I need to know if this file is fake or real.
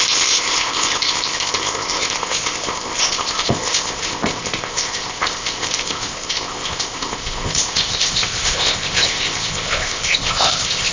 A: fake